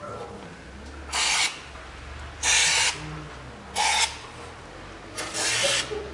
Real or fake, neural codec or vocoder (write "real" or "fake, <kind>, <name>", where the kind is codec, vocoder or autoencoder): real